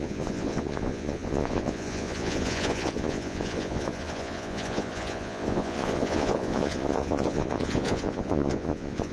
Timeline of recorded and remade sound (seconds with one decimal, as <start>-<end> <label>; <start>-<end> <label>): 0.0-9.1 remade